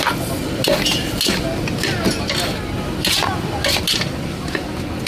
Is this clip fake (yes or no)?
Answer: no